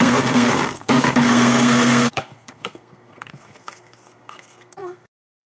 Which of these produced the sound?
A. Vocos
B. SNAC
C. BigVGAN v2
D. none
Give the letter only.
B